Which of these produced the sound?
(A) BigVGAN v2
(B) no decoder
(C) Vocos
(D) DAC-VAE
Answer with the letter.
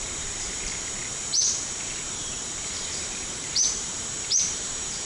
A